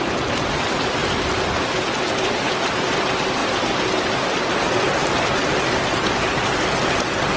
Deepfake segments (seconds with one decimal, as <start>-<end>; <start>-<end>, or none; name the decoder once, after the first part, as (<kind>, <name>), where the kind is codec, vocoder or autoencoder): none